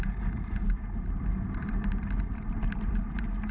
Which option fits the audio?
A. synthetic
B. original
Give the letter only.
A